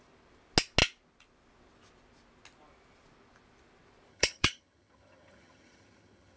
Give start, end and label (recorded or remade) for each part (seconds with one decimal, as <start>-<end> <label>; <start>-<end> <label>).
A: 0.0-4.1 recorded; 4.1-6.4 remade